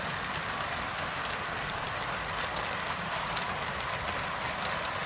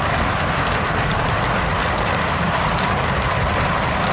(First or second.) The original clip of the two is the first